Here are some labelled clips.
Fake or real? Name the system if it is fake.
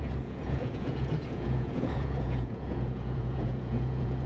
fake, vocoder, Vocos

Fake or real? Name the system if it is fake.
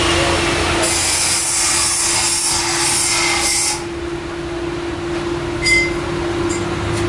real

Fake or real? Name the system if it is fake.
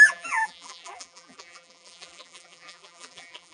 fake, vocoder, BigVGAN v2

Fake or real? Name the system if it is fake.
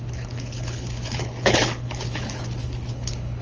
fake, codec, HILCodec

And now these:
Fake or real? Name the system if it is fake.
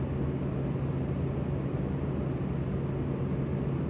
real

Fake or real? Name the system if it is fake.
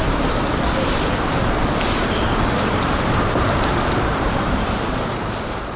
fake, vocoder, BigVGAN v2